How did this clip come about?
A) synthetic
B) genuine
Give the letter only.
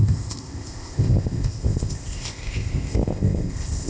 A